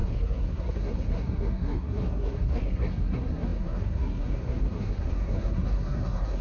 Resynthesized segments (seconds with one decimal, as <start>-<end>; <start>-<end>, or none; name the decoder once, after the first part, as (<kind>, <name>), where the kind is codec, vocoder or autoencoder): 0.0-6.4 (codec, SNAC)